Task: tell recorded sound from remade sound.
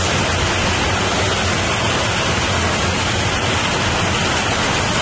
recorded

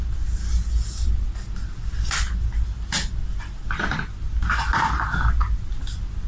recorded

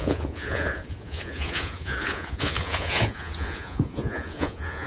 remade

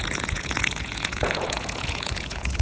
remade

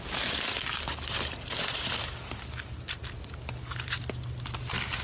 recorded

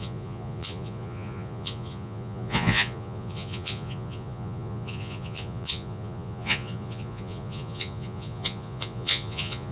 remade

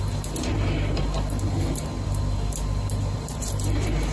recorded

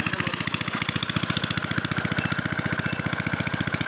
recorded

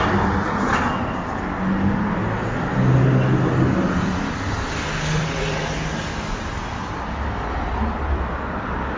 recorded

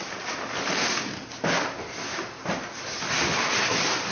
recorded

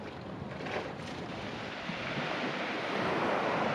recorded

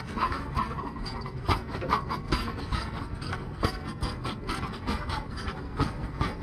remade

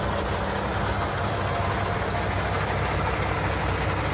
recorded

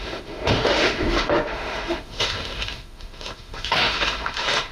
remade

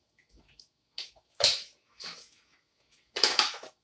remade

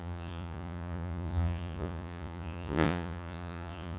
remade